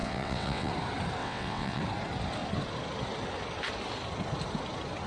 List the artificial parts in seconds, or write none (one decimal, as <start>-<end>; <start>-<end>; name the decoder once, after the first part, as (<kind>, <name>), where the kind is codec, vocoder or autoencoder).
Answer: 0.0-0.7 (vocoder, WaveNeXt); 1.2-1.8